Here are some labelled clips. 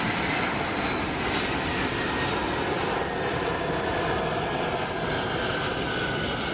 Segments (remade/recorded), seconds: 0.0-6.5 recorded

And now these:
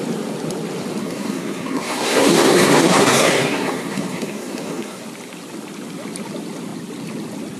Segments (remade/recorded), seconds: 0.0-1.0 recorded; 1.0-5.0 remade; 5.0-7.6 recorded

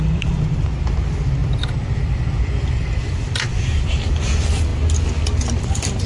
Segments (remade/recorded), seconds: 0.0-4.7 remade; 4.7-5.6 recorded; 5.6-6.1 remade